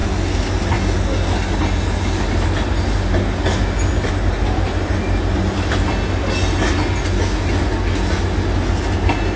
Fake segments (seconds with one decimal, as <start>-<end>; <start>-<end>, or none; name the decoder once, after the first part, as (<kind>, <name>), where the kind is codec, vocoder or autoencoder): none